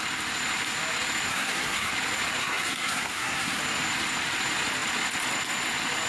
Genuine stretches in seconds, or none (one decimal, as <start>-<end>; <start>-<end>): 0.0-1.3; 1.9-2.4; 3.6-6.1